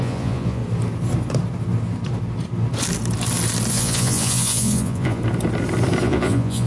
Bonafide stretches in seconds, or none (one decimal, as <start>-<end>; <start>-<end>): 0.6-3.7; 5.2-6.0